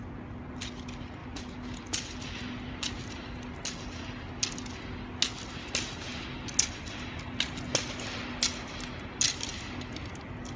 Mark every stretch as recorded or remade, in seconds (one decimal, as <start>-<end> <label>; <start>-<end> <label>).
0.0-10.6 recorded